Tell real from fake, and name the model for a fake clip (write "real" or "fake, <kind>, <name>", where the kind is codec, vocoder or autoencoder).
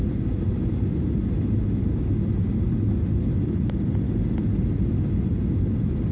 real